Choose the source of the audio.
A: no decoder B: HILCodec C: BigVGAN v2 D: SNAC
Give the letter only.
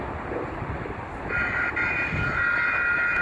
A